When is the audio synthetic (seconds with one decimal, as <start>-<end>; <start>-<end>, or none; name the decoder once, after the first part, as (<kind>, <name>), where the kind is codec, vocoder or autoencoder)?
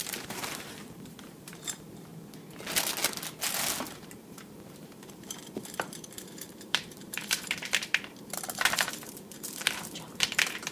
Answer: 0.0-2.1 (vocoder, BigVGAN v2); 3.8-10.7